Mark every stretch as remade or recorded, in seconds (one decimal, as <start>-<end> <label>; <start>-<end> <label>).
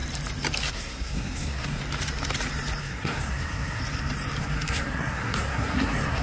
0.0-0.7 recorded; 0.7-1.8 remade; 1.8-2.8 recorded; 2.8-3.8 remade; 3.8-4.4 recorded; 4.4-6.2 remade